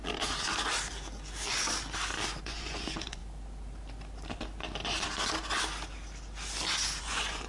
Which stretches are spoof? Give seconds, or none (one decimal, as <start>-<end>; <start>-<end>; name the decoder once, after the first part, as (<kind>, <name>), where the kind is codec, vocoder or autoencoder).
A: 2.4-3.2 (vocoder, Vocos); 7.0-7.5